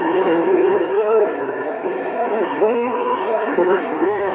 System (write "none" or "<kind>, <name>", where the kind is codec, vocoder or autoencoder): codec, SNAC